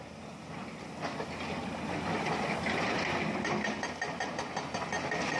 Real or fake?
real